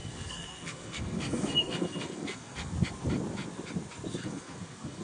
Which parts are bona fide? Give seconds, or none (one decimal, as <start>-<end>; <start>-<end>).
2.7-4.2